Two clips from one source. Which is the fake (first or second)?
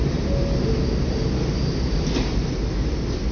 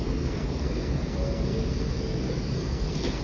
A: second